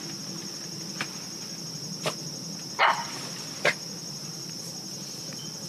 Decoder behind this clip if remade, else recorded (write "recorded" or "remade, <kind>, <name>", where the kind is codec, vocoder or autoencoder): recorded